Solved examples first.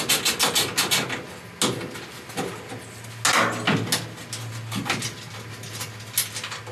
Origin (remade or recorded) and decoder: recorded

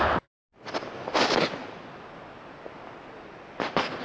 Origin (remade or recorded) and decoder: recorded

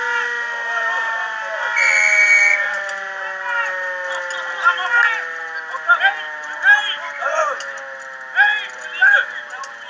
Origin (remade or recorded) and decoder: recorded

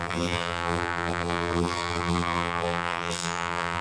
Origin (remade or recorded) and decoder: remade, vocoder, BigVGAN v2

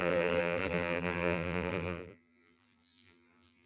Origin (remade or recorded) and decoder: remade, vocoder, BigVGAN v2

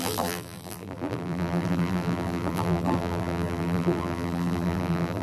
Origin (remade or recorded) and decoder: remade, vocoder, BigVGAN v2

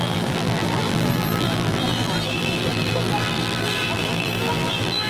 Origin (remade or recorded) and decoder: remade, vocoder, BigVGAN v2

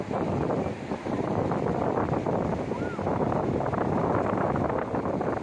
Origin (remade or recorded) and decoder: recorded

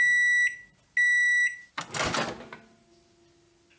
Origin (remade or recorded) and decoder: recorded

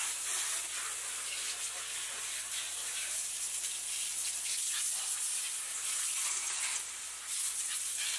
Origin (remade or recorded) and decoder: recorded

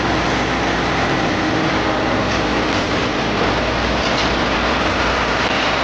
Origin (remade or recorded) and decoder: remade, vocoder, BigVGAN v2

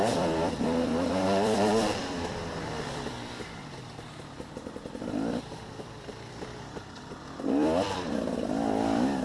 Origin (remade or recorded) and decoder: remade, vocoder, BigVGAN v2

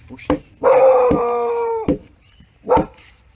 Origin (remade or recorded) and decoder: remade, vocoder, BigVGAN v2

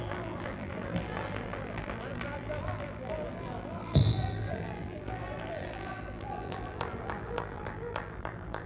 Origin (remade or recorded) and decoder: remade, vocoder, BigVGAN v2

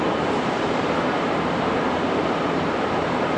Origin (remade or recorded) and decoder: remade, vocoder, BigVGAN v2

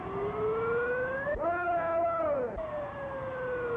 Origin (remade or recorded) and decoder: recorded